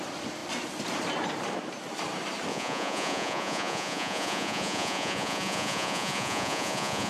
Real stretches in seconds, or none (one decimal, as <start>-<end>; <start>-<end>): 0.0-2.5